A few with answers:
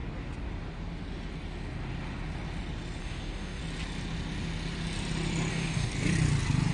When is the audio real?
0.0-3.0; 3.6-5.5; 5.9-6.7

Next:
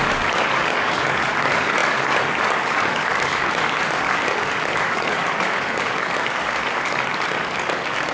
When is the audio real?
none

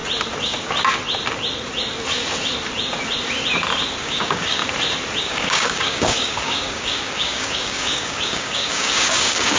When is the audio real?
0.0-4.0; 4.6-5.2

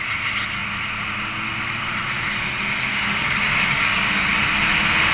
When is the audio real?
0.0-2.9; 4.3-5.1

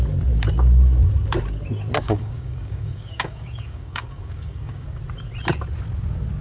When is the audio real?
0.0-2.0; 5.0-6.4